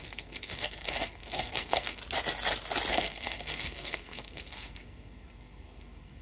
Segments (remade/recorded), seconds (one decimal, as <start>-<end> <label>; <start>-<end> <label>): 0.0-2.0 remade; 2.0-2.9 recorded; 2.9-6.2 remade